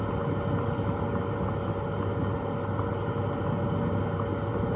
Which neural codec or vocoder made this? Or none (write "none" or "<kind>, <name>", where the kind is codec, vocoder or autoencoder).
none